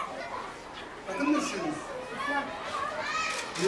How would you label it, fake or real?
real